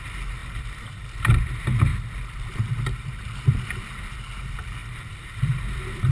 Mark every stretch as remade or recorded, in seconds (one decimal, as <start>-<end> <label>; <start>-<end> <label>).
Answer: 0.0-0.4 recorded; 0.4-1.4 remade; 1.4-4.8 recorded; 4.8-6.1 remade